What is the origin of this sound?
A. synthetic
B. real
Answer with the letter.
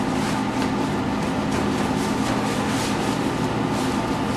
B